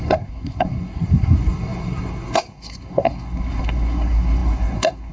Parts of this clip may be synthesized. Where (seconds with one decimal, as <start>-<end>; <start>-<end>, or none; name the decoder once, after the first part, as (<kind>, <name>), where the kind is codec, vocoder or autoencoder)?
0.0-5.1 (codec, SNAC)